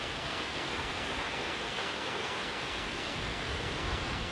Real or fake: fake